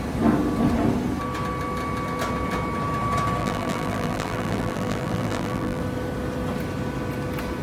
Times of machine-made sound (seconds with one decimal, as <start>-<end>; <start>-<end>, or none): 3.4-5.8

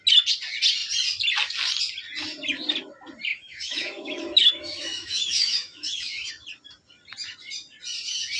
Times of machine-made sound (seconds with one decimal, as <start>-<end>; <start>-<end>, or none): 3.3-6.3

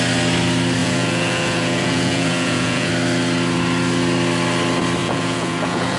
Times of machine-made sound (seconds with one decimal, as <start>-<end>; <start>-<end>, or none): 0.8-2.9; 5.0-6.0

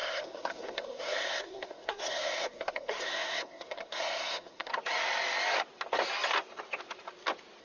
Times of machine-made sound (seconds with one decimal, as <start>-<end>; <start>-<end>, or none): 0.0-4.7

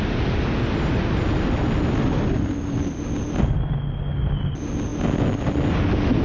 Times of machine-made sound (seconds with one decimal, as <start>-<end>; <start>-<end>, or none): none

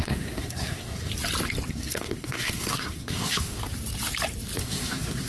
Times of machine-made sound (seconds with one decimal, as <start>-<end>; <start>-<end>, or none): 0.0-1.1; 1.7-3.6; 4.6-5.3

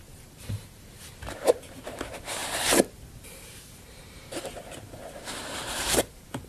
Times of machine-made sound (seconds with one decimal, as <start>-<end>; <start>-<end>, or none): 0.0-6.5

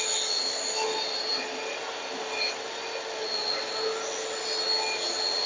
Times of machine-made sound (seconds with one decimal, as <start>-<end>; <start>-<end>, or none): none